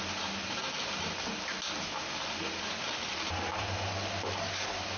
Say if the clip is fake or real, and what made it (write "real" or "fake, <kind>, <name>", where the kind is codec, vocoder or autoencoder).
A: real